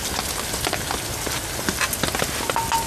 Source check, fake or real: real